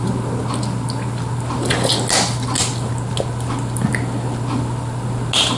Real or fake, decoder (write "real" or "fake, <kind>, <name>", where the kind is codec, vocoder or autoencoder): real